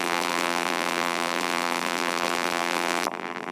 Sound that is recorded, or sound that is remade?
remade